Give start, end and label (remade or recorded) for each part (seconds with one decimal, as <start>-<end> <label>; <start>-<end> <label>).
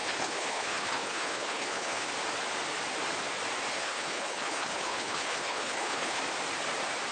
0.0-2.1 remade; 2.1-3.7 recorded; 3.7-6.2 remade; 6.2-7.1 recorded